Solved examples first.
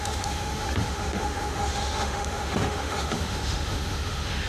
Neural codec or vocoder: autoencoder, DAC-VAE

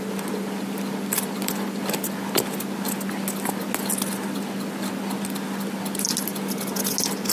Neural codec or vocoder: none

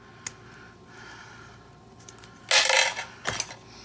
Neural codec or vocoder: none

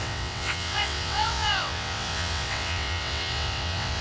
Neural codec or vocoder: vocoder, WaveNeXt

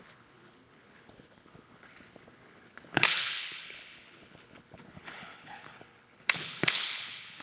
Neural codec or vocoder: codec, HILCodec